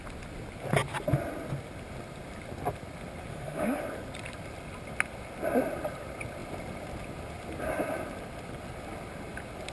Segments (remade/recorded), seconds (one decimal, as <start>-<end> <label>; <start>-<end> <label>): 0.0-3.3 recorded; 3.3-3.8 remade; 3.8-9.7 recorded

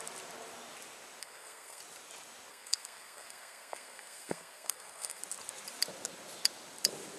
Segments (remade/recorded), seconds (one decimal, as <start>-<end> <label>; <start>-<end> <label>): 0.0-1.2 recorded; 1.2-1.8 remade; 1.8-2.5 recorded; 2.5-5.2 remade; 5.2-7.2 recorded

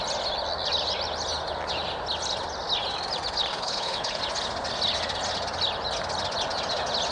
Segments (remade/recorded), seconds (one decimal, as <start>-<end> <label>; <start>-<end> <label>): 0.0-3.5 recorded; 3.5-4.2 remade; 4.2-7.1 recorded

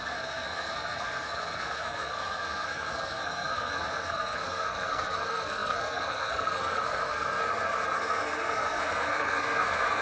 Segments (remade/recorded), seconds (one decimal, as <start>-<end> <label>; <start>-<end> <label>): 0.0-10.0 remade

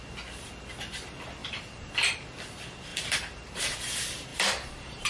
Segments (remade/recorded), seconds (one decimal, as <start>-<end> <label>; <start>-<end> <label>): 0.0-1.4 recorded; 1.4-1.9 remade; 1.9-2.9 recorded; 2.9-3.6 remade; 3.6-4.3 recorded; 4.3-5.1 remade

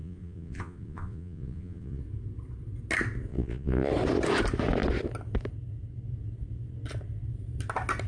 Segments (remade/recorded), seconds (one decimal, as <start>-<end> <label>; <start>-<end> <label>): 0.0-2.0 remade; 2.0-3.3 recorded; 3.3-3.9 remade; 3.9-8.1 recorded

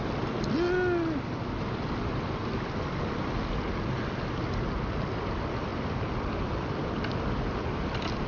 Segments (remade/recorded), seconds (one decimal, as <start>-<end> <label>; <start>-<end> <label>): 0.0-8.3 recorded

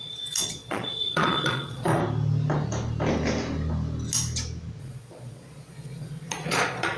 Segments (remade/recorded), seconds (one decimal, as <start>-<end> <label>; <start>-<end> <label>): 0.0-2.0 remade; 2.0-4.8 recorded; 4.8-7.0 remade